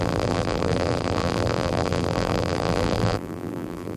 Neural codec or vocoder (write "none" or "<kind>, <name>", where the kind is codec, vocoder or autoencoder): vocoder, BigVGAN v2